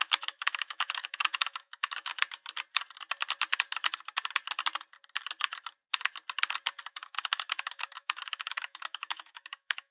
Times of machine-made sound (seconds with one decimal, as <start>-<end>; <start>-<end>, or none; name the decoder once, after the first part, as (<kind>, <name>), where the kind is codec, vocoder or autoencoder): 0.0-2.1 (autoencoder, DAC-VAE); 6.9-9.9